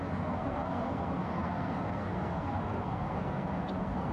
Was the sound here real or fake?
fake